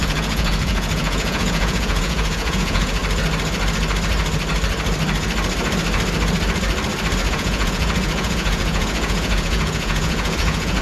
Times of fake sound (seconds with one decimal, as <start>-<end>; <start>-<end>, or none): 0.0-3.0; 7.3-10.8